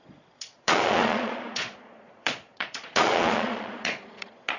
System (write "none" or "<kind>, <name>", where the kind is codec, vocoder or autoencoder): vocoder, Vocos